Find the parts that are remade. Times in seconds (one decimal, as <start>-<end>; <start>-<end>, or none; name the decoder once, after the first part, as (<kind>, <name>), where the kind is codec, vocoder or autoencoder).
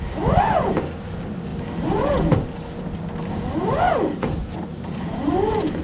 4.7-5.8 (vocoder, BigVGAN v2)